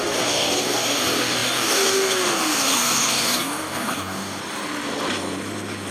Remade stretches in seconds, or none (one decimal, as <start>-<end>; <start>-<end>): 0.0-4.4